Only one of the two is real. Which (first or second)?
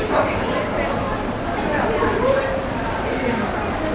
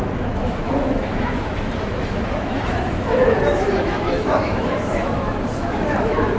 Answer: first